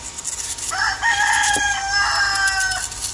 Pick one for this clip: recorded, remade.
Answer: recorded